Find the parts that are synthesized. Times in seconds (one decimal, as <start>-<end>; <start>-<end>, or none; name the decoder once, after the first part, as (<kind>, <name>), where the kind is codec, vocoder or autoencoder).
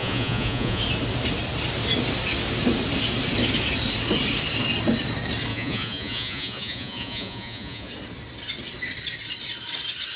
0.0-0.8 (vocoder, Vocos); 5.5-7.9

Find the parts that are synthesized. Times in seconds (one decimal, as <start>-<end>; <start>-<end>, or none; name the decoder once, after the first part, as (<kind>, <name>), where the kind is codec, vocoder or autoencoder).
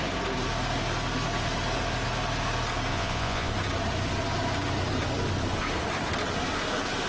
2.9-3.5 (vocoder, Vocos)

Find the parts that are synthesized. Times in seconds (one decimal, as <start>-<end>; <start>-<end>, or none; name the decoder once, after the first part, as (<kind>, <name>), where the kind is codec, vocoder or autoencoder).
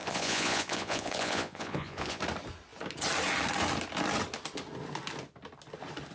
0.0-2.2 (vocoder, Vocos)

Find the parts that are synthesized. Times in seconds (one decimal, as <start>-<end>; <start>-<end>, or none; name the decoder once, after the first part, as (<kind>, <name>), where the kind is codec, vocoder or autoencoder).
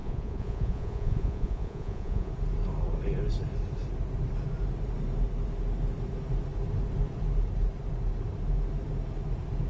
0.0-2.3 (vocoder, Vocos)